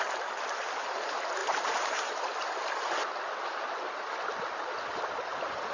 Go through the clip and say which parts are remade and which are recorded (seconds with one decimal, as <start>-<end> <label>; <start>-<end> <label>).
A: 0.0-1.4 recorded; 1.4-2.1 remade; 2.1-5.7 recorded